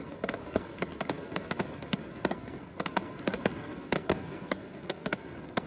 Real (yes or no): no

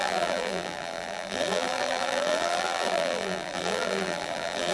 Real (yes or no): no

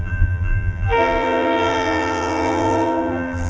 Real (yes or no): no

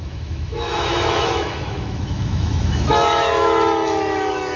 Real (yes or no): no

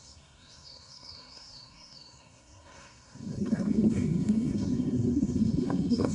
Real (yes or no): no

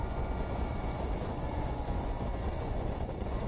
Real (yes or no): no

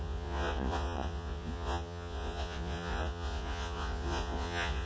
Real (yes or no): no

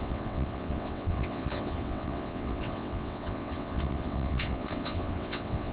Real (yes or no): no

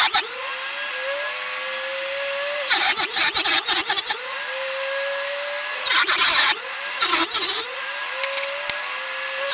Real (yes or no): yes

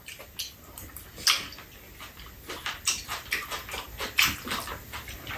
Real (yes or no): yes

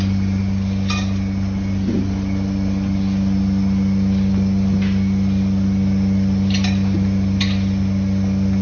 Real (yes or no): yes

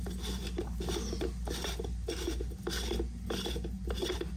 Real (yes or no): yes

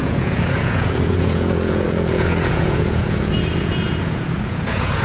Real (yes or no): no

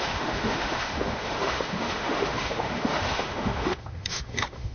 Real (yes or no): no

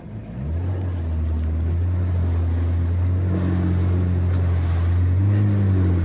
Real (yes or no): yes